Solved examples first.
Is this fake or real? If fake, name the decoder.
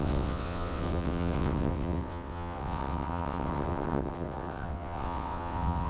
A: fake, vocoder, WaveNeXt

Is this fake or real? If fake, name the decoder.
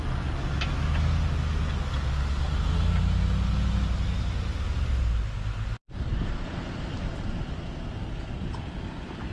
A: real